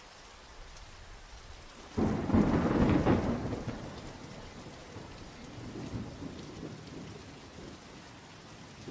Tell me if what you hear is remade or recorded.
recorded